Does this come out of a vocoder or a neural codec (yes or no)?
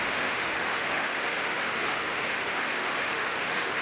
yes